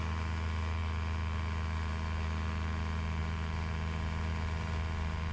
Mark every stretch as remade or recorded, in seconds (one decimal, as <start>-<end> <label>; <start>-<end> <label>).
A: 0.0-5.3 recorded